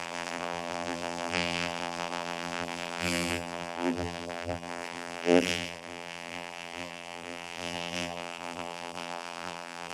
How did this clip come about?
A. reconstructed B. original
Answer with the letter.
A